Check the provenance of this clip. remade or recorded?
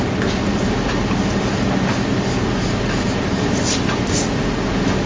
recorded